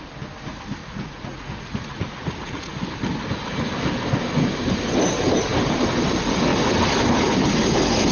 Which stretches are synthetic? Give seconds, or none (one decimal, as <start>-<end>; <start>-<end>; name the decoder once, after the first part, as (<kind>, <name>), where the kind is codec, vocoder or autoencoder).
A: 0.8-2.7 (vocoder, Vocos)